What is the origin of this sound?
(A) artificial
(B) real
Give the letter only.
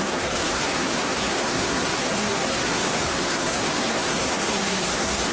A